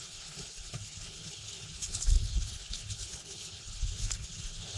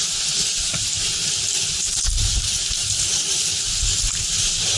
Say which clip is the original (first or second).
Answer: second